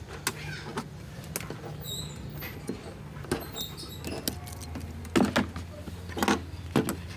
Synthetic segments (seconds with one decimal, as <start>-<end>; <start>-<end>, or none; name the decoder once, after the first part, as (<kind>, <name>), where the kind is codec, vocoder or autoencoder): none